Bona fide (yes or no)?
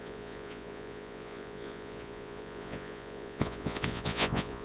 no